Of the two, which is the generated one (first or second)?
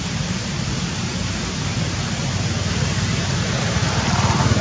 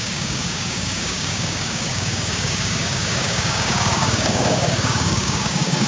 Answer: second